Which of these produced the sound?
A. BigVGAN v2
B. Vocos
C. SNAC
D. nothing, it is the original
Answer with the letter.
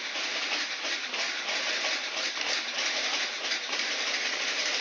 A